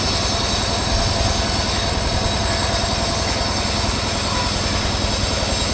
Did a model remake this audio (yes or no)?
no